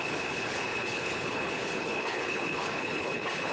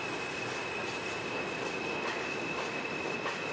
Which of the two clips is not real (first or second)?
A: first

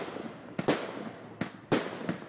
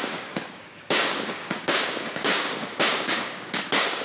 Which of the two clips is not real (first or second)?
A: second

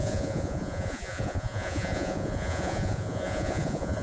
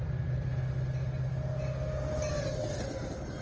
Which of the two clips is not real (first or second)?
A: first